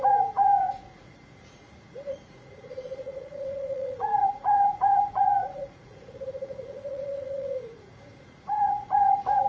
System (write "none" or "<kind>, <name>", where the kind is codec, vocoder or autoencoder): vocoder, Vocos